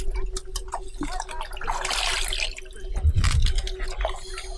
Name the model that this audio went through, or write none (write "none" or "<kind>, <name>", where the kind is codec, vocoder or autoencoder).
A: none